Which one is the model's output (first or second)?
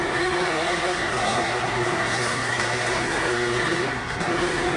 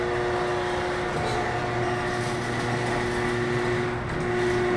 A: first